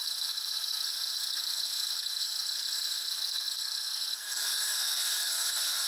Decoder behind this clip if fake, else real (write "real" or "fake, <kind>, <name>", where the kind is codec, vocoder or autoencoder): fake, codec, SNAC